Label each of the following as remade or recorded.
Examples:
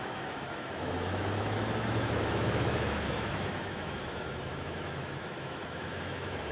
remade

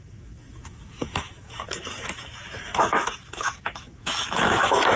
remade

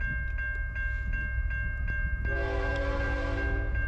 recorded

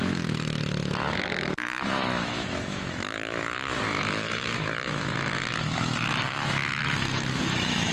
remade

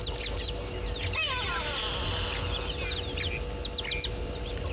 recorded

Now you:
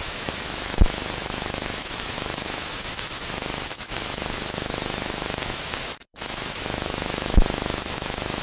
remade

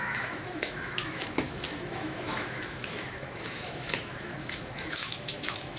remade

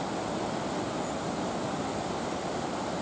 recorded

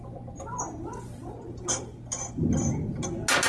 recorded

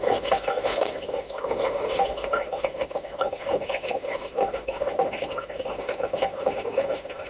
remade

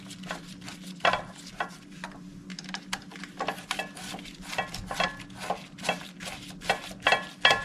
recorded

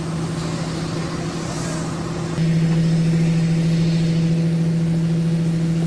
recorded